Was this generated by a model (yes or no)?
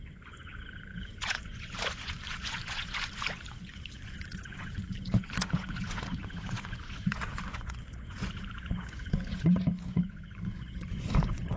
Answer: yes